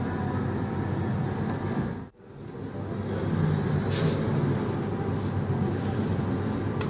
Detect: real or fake real